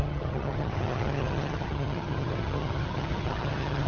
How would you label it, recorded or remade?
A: remade